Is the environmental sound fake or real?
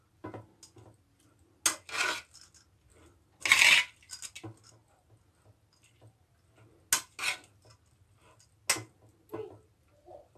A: real